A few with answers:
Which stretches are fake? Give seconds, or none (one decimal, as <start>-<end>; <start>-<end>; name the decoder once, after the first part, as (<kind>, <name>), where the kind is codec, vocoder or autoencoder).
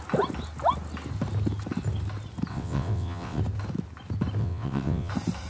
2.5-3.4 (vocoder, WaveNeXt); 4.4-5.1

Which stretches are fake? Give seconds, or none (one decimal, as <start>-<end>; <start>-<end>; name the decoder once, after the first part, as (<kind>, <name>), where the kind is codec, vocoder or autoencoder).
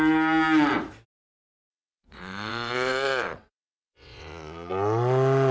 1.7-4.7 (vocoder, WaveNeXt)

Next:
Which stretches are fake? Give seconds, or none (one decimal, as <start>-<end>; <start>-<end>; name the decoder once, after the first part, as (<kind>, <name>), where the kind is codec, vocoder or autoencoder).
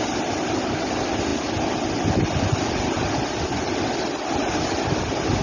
none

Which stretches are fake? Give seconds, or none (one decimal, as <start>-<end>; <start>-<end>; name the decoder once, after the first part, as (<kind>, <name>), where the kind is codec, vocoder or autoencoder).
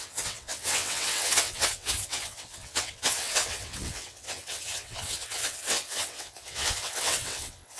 0.0-7.8 (vocoder, WaveNeXt)